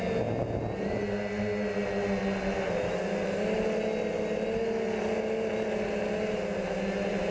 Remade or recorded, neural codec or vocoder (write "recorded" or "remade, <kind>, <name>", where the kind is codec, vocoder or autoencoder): recorded